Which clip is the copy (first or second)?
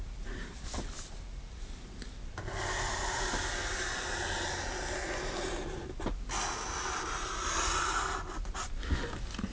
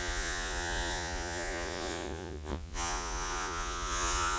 second